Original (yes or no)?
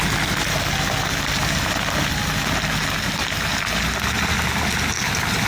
yes